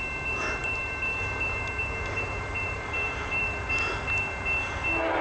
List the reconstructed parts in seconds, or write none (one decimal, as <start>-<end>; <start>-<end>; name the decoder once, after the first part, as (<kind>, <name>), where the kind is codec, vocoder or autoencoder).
0.6-3.7 (vocoder, BigVGAN v2)